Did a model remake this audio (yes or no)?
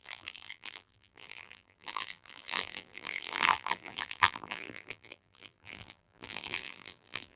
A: yes